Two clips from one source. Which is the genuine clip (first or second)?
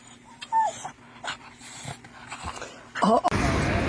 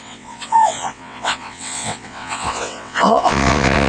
first